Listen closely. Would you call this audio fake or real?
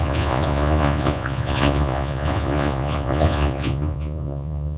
fake